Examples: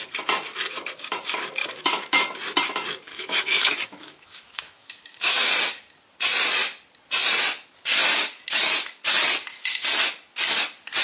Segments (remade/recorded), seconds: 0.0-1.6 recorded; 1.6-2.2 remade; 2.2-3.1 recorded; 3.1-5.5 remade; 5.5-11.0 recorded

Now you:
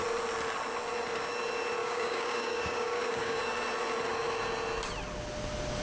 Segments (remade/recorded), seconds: 0.0-1.8 recorded; 1.8-3.4 remade; 3.4-5.8 recorded

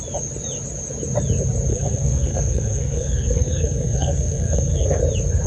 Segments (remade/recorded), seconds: 0.0-1.7 recorded; 1.7-5.0 remade; 5.0-5.5 recorded

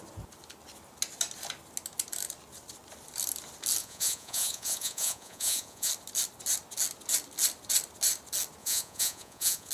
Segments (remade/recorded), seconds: 0.0-3.8 recorded; 3.8-5.9 remade; 5.9-8.6 recorded; 8.6-9.7 remade

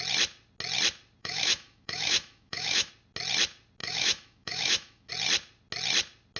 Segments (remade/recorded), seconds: 0.0-1.2 recorded; 1.2-2.9 remade; 2.9-3.8 recorded; 3.8-5.1 remade; 5.1-6.4 recorded

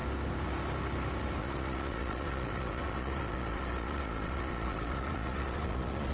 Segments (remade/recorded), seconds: 0.0-1.4 recorded; 1.4-6.1 remade

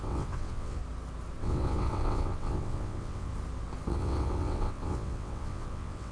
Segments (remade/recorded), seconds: 0.0-0.8 remade; 0.8-1.4 recorded; 1.4-3.3 remade; 3.3-3.9 recorded; 3.9-6.1 remade

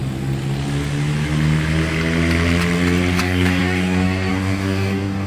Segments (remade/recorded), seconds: 0.0-3.2 recorded; 3.2-5.3 remade